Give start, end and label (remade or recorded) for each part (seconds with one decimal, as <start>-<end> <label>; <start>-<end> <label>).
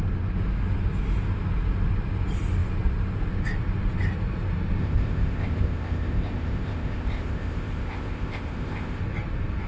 0.0-4.8 recorded; 4.8-9.0 remade; 9.0-9.7 recorded